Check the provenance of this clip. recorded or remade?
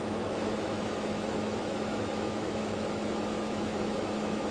remade